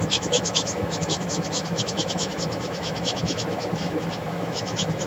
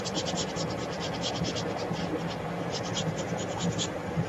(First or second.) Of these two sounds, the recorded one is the second